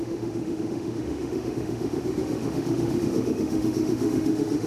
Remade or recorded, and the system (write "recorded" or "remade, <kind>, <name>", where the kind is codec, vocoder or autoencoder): remade, autoencoder, DAC-VAE